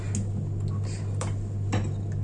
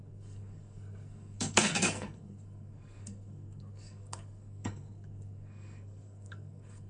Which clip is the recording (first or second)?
first